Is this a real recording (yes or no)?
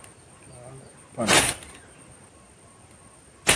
yes